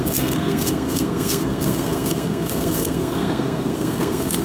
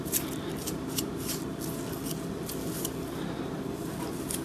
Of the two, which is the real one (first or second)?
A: second